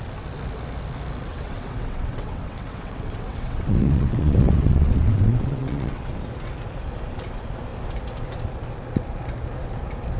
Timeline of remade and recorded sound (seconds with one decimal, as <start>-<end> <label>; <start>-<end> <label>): 0.0-1.3 recorded; 1.3-6.1 remade; 6.1-10.2 recorded